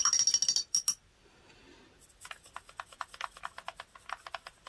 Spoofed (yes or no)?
no